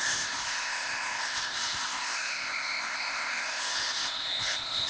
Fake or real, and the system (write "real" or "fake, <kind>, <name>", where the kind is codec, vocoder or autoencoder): fake, codec, ZipCodec